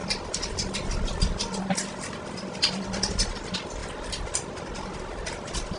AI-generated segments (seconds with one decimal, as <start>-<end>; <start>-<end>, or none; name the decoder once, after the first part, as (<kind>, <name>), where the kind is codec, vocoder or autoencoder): 0.0-3.1 (vocoder, BigVGAN v2); 3.8-5.8